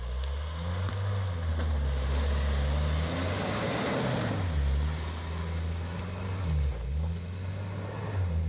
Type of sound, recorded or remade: recorded